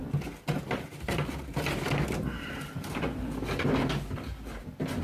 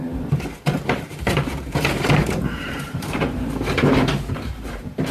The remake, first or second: second